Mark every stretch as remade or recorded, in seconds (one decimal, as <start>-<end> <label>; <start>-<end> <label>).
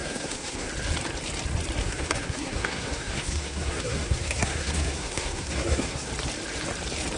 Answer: 0.0-0.7 remade; 0.7-1.8 recorded; 1.8-6.1 remade; 6.1-7.2 recorded